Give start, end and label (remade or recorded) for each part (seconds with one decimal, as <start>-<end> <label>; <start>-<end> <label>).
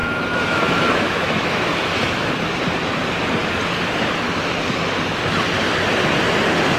0.0-2.3 remade; 2.3-6.8 recorded